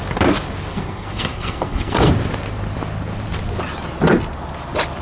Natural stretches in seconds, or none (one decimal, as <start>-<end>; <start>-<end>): 0.0-0.7; 2.1-5.0

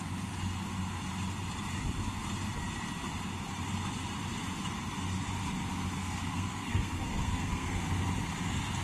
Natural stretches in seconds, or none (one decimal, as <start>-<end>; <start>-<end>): 0.0-6.0; 7.8-8.8

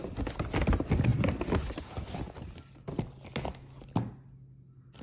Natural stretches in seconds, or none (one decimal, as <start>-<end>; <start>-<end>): 0.0-5.0

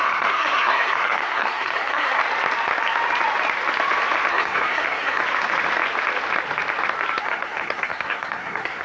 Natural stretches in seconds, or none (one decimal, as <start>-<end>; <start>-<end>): 2.2-4.3; 5.2-7.2

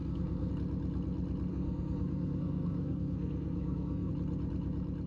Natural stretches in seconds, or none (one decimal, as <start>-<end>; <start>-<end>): 0.5-1.5; 4.1-5.1

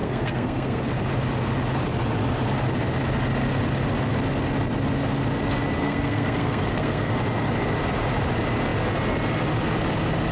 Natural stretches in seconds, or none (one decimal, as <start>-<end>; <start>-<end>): 0.8-5.8; 7.1-10.3